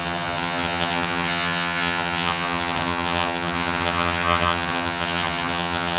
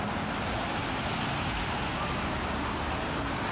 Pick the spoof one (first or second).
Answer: first